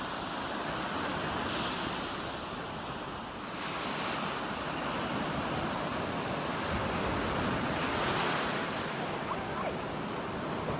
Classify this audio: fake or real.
real